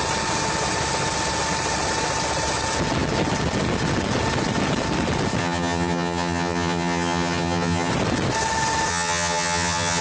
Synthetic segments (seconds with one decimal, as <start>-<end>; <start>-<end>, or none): 5.4-7.9; 8.9-10.0